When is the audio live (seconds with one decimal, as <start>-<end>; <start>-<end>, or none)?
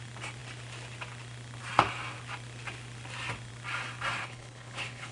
0.0-4.2